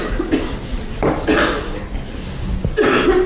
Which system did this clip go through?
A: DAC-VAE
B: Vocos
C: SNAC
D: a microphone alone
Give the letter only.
D